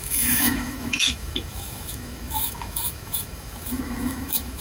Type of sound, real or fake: fake